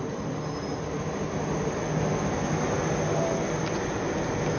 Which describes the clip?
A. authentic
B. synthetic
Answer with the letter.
A